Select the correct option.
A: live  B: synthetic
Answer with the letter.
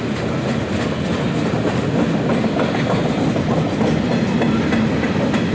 A